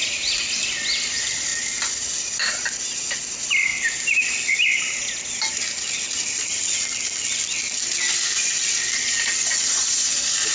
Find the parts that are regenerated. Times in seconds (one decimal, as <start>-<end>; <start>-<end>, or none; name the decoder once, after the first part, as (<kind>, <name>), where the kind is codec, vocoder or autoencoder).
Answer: none